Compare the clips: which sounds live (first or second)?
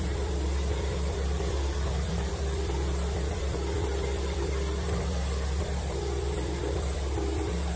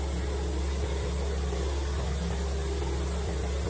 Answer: second